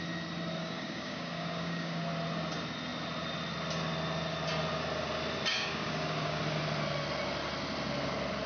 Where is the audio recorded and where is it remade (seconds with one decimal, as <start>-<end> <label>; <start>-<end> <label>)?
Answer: 0.0-0.6 recorded; 0.6-2.0 remade; 2.0-5.5 recorded; 5.5-6.4 remade; 6.4-8.5 recorded